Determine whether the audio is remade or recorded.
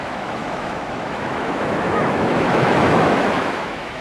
remade